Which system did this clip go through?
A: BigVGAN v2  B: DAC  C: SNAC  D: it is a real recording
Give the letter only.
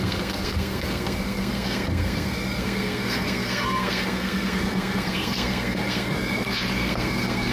C